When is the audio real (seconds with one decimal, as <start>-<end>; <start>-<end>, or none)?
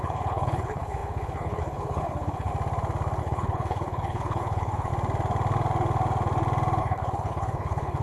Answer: 2.5-3.2; 4.9-6.8